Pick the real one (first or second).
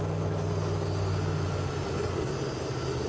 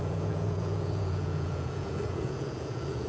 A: first